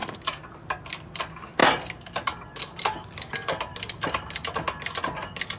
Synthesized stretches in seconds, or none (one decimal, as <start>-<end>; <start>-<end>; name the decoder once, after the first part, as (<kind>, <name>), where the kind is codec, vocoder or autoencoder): none